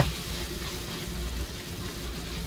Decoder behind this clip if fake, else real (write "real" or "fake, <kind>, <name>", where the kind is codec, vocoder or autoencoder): real